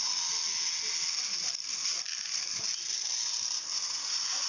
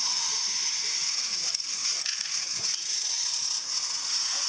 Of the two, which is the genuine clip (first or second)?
first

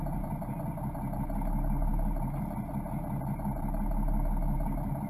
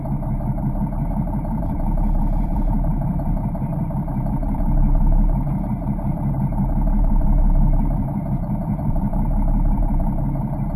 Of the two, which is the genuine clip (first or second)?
first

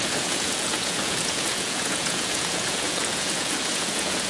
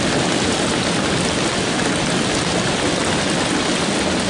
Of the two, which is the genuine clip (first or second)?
second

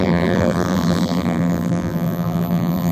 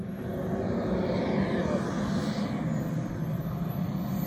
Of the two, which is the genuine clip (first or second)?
second